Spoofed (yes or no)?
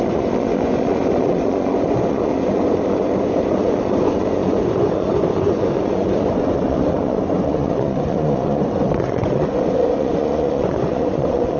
yes